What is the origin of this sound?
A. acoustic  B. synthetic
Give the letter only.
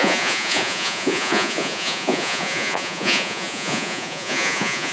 B